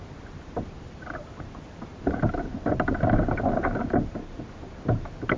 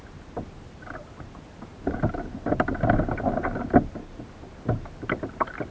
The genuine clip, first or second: second